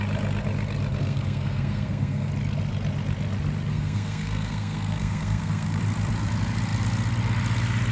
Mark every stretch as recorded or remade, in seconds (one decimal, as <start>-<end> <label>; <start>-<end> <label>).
0.0-1.0 recorded; 1.0-2.3 remade; 2.3-3.7 recorded; 3.7-5.8 remade; 5.8-7.9 recorded